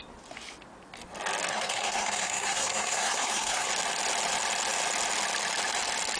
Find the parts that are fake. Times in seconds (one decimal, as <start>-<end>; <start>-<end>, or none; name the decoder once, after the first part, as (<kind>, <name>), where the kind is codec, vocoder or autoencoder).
1.5-3.7 (codec, SNAC)